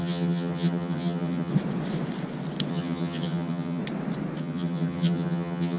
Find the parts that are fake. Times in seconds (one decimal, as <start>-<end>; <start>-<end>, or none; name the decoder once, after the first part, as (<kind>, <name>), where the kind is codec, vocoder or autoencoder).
0.0-1.5 (vocoder, HiFi-GAN); 2.7-3.8; 4.4-5.8